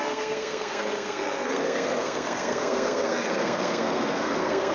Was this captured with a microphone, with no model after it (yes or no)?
no